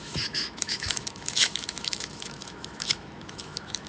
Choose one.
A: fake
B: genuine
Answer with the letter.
A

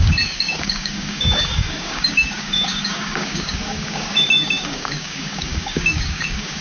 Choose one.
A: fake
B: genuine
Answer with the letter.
A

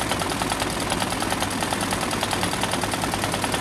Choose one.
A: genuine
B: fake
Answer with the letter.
B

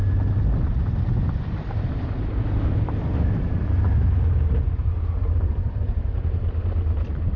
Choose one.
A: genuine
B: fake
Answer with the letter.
A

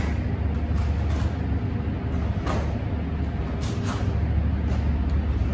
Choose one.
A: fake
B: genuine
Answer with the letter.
B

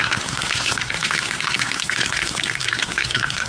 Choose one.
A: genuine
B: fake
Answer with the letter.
B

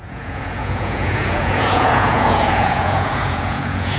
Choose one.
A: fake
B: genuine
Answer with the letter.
A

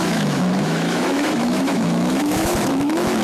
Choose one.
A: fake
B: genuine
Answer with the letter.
A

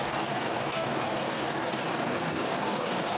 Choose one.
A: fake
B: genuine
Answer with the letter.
A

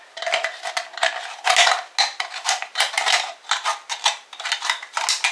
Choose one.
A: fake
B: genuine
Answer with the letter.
B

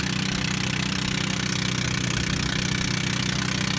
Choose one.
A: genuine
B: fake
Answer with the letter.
A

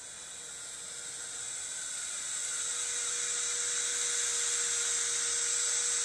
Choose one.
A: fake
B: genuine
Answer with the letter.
B